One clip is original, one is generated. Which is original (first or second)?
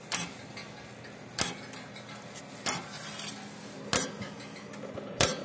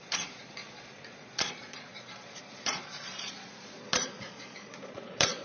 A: first